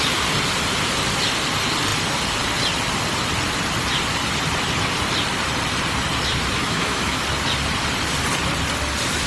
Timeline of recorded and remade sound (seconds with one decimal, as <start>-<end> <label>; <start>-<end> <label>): 0.0-6.6 recorded; 6.6-7.2 remade; 7.2-9.3 recorded